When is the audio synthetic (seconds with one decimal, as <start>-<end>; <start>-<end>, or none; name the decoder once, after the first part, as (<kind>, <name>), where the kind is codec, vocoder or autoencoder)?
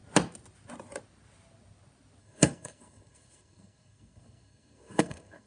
2.2-5.5 (codec, SNAC)